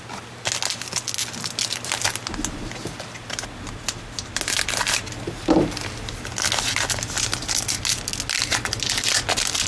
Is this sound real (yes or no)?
yes